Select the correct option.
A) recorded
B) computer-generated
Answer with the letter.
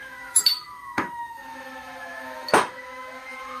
B